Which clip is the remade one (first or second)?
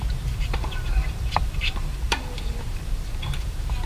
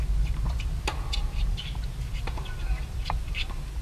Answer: first